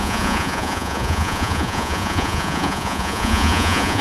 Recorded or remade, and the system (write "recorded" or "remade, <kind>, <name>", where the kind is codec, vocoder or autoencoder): remade, vocoder, Vocos